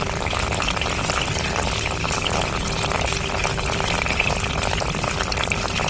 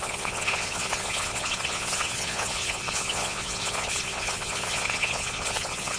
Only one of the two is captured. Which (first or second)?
first